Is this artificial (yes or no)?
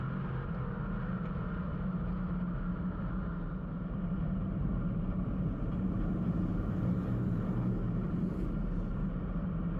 yes